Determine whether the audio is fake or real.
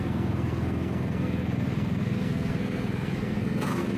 fake